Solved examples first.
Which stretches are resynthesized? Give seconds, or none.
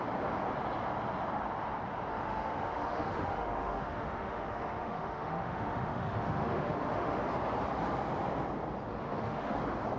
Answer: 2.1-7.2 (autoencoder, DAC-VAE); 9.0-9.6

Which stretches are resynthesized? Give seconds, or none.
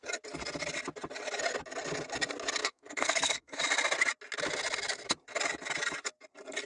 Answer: 2.6-3.6 (codec, SNAC)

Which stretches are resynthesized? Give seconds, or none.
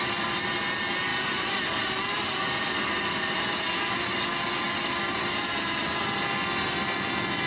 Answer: 1.1-1.7 (vocoder, BigVGAN v2)